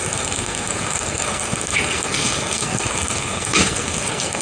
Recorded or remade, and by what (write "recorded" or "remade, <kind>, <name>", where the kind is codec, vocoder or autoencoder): remade, codec, SNAC